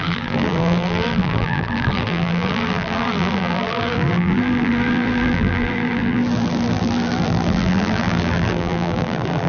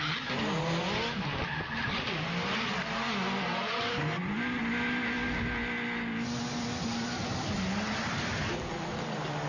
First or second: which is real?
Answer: second